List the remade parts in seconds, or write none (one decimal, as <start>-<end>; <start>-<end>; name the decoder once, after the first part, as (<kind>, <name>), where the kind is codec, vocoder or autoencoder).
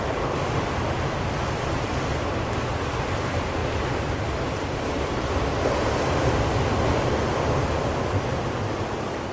none